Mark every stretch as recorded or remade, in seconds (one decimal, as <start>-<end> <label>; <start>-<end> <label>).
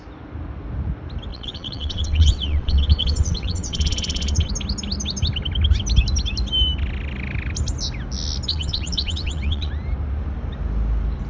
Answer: 0.0-1.3 recorded; 1.3-4.5 remade; 4.5-8.5 recorded; 8.5-9.7 remade; 9.7-11.3 recorded